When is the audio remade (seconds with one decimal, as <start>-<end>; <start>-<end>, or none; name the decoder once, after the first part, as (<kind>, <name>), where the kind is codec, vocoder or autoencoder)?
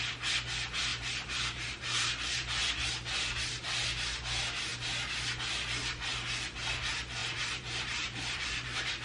0.9-2.6 (vocoder, BigVGAN v2); 7.2-9.0